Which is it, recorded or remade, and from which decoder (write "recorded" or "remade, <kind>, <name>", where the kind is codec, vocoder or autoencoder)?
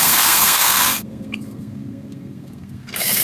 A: remade, codec, SNAC